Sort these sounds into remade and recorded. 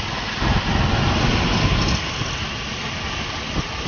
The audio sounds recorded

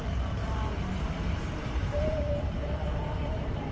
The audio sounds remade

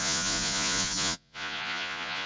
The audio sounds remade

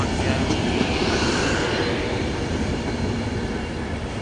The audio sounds recorded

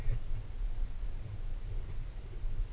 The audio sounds recorded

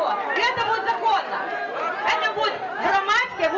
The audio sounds recorded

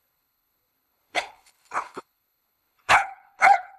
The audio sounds remade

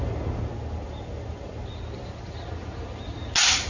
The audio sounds recorded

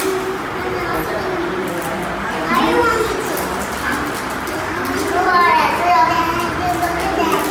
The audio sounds recorded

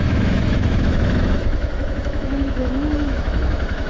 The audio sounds remade